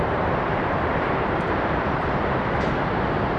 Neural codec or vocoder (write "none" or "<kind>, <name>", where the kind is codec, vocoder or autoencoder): vocoder, BigVGAN v2